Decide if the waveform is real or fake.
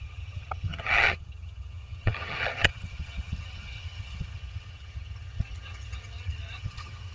fake